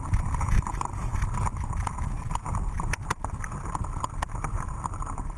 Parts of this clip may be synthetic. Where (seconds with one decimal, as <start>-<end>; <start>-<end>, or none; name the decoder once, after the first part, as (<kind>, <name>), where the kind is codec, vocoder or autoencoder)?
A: 0.0-1.1 (vocoder, BigVGAN v2); 4.3-5.4